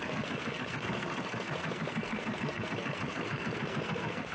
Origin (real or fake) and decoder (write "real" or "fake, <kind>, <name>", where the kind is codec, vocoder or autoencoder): fake, codec, SNAC